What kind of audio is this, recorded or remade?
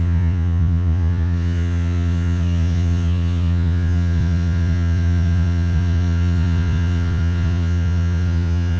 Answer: remade